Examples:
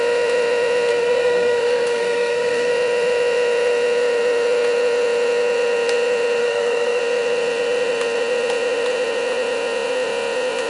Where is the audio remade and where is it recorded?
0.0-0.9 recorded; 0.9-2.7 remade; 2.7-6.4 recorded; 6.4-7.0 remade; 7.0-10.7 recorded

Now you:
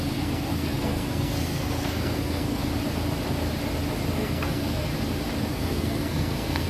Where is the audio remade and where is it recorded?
0.0-2.6 remade; 2.6-4.1 recorded; 4.1-4.9 remade; 4.9-5.5 recorded; 5.5-6.7 remade

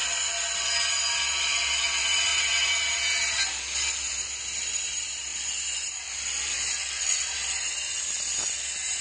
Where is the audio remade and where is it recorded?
0.0-9.0 recorded

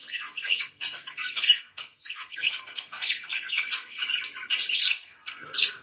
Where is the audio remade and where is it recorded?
0.0-4.0 remade; 4.0-4.8 recorded; 4.8-5.8 remade